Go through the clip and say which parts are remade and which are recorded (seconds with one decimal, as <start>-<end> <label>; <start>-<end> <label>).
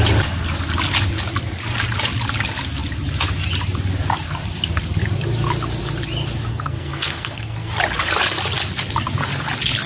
0.0-6.5 recorded; 6.5-7.7 remade; 7.7-9.9 recorded